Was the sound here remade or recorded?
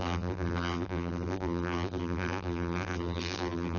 remade